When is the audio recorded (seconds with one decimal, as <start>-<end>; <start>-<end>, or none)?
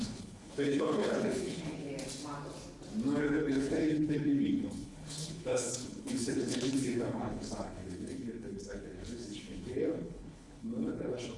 1.9-3.2